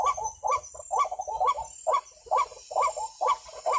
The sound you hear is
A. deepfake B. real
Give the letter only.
B